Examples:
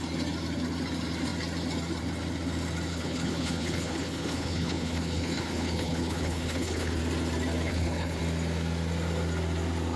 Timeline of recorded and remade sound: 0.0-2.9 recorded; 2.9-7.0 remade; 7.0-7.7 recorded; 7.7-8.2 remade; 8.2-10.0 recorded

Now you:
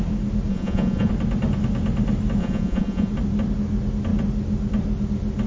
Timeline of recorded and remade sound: 0.0-0.5 recorded; 0.5-1.1 remade; 1.1-2.4 recorded; 2.4-3.1 remade; 3.1-5.5 recorded

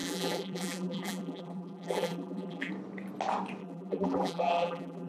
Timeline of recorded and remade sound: 0.0-2.7 remade; 2.7-3.6 recorded; 3.6-5.1 remade

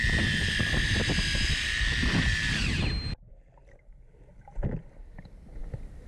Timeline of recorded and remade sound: 0.0-2.6 remade; 2.6-5.6 recorded; 5.6-6.1 remade